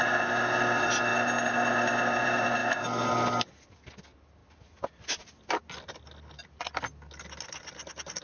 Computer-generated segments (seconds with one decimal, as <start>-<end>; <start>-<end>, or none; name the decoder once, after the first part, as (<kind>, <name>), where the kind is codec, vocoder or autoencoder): none